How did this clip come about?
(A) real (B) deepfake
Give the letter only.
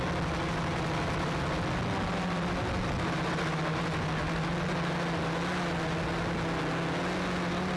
A